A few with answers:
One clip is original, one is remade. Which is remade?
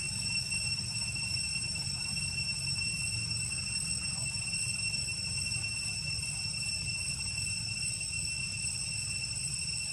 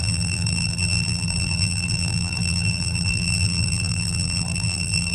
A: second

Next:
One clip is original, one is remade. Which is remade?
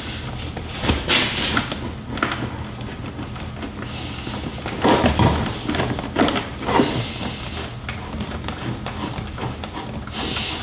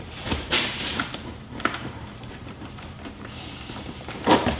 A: second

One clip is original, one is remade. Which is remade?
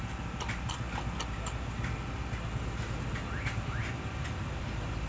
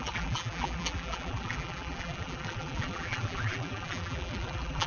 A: second